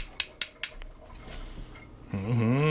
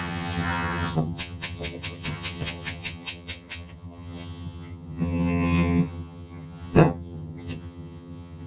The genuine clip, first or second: first